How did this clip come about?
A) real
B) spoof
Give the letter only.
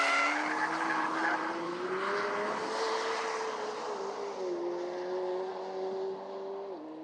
A